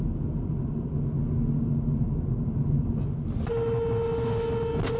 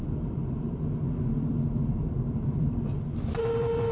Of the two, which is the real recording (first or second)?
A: first